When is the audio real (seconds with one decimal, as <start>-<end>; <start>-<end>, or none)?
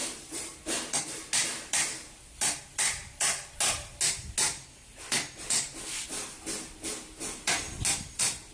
0.6-8.5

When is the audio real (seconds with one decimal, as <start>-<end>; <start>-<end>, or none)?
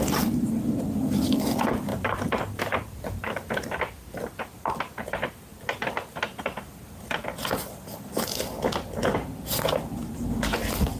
0.0-1.9; 3.5-5.5; 6.7-11.0